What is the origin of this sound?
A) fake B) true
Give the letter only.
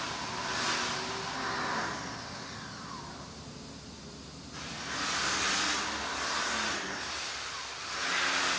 B